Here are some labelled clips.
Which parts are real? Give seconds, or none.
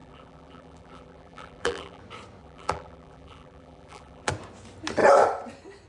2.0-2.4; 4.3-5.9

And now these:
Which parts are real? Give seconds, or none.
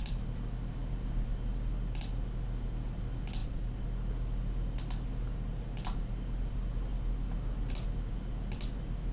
0.8-3.4; 4.1-9.1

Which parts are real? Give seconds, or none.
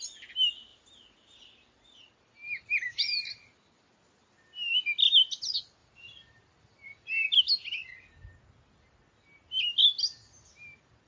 0.0-0.7; 3.8-5.8; 7.4-11.1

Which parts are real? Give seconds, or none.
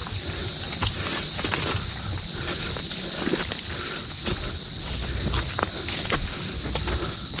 0.0-7.4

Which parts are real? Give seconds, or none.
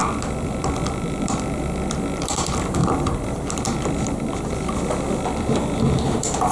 2.8-5.6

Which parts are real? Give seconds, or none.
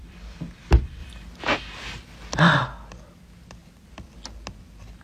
1.0-2.4; 3.6-4.6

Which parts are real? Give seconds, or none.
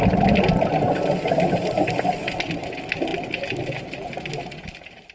0.0-5.1